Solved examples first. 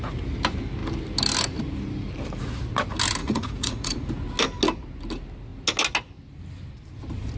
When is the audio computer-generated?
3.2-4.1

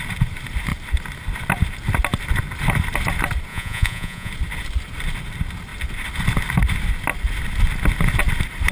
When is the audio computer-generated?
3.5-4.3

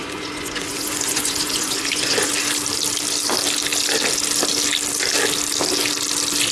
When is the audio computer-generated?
0.0-2.3